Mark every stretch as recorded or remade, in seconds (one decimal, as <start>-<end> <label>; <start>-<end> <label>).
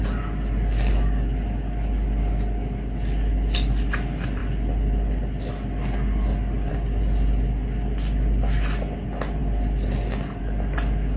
0.0-11.2 recorded